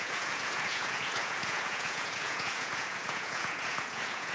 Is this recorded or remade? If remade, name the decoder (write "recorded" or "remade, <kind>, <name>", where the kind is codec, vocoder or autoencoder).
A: remade, vocoder, Vocos